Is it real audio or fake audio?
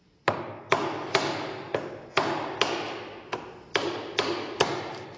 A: real